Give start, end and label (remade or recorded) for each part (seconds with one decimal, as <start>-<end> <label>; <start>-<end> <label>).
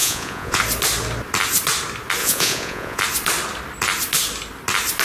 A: 0.0-0.6 remade; 0.6-2.2 recorded; 2.2-3.0 remade; 3.0-5.0 recorded